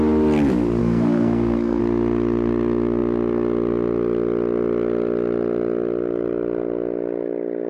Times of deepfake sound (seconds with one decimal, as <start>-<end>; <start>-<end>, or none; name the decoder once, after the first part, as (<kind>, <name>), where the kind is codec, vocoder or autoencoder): 0.8-1.8 (codec, SNAC)